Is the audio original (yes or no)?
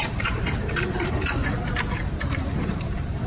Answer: no